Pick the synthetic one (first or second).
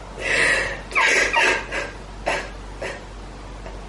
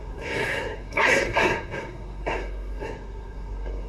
second